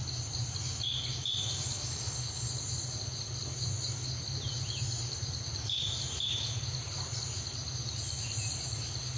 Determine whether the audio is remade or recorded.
recorded